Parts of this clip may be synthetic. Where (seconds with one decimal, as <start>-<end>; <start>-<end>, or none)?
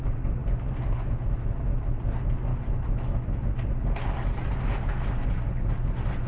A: 2.5-3.4